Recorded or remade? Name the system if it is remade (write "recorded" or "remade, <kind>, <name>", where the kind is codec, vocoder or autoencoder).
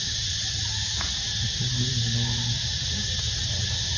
recorded